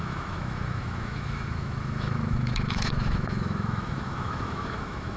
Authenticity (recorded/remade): remade